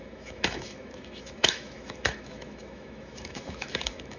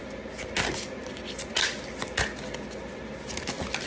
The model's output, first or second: first